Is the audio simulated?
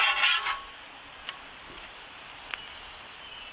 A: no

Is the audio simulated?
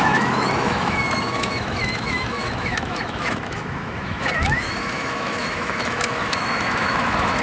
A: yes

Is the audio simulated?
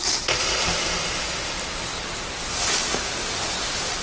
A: no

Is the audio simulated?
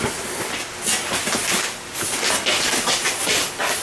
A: no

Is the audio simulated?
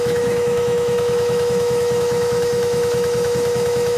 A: yes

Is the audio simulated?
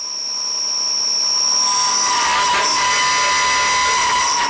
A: no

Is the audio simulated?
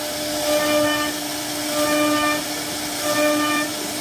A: no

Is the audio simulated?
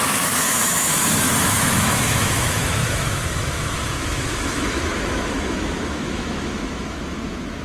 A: yes